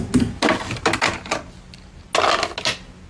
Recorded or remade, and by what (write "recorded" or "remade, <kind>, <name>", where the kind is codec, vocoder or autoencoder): recorded